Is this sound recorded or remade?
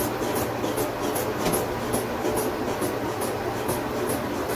recorded